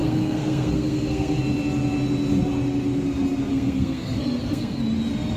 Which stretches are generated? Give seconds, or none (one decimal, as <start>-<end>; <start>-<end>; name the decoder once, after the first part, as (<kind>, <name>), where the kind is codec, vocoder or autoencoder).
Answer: 0.0-1.4 (codec, SNAC); 3.5-4.8